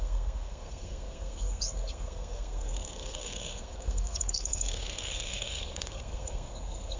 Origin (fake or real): fake